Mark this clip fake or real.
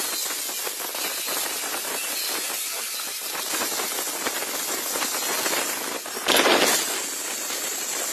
real